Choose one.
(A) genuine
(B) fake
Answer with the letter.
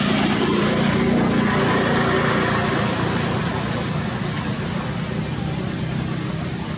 A